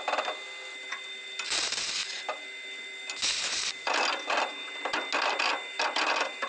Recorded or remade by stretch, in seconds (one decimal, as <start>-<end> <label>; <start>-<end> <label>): 0.0-6.5 recorded